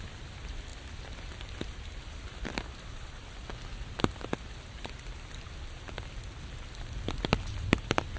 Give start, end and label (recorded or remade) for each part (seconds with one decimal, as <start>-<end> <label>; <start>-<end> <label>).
0.0-8.2 recorded